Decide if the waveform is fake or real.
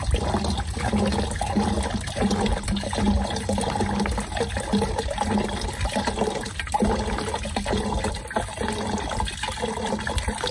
real